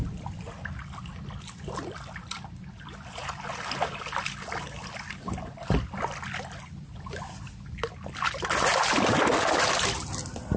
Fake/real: real